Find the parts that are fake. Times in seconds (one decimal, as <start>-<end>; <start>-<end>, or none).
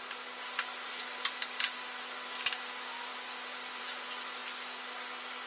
none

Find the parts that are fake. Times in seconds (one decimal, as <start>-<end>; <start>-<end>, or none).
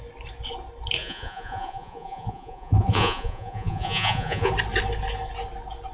1.0-4.5